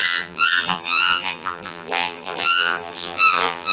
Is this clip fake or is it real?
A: fake